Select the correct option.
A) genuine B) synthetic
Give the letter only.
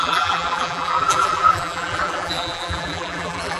B